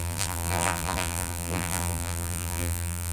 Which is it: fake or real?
fake